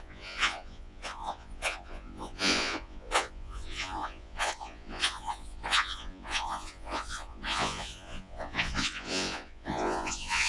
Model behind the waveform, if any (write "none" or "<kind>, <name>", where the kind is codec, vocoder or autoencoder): vocoder, Vocos